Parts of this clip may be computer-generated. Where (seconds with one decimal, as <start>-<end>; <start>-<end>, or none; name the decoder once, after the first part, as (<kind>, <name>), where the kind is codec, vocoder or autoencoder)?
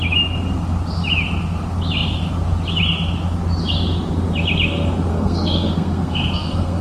5.1-6.8 (codec, SNAC)